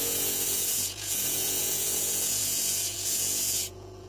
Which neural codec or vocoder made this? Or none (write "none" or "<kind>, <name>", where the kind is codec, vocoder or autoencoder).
vocoder, Vocos